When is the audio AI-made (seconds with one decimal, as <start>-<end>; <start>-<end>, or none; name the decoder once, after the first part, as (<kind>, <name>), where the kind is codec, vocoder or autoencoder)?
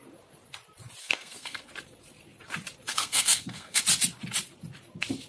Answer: 1.0-1.7 (codec, SNAC); 2.9-3.8